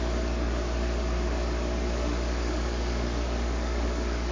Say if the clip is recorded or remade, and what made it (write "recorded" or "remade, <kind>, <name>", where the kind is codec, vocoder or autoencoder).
remade, codec, DAC